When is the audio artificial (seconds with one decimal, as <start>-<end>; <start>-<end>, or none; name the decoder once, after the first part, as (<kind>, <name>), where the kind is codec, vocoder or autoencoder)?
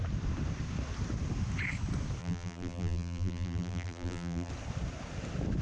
2.2-4.5 (vocoder, BigVGAN v2)